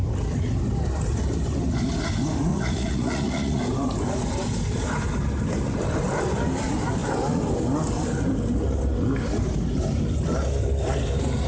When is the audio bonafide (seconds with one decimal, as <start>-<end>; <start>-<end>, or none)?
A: 0.0-2.5; 3.6-11.5